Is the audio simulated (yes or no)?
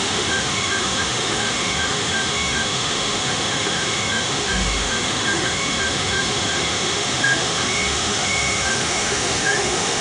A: yes